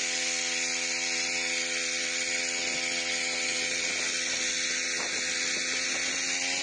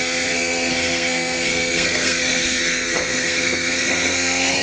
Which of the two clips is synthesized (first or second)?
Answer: second